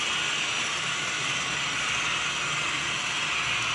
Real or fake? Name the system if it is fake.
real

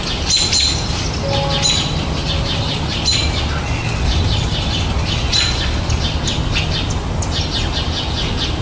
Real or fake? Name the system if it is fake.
real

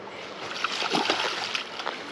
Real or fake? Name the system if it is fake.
real